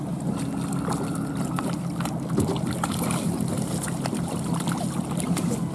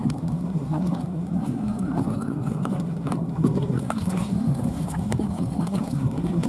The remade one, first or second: second